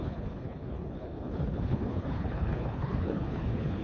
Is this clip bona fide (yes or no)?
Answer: no